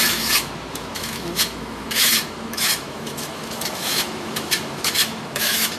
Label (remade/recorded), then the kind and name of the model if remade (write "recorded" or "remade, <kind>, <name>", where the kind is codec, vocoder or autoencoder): remade, autoencoder, DAC-VAE